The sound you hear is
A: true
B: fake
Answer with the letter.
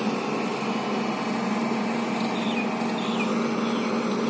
A